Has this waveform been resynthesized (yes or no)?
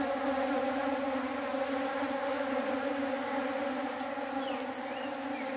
no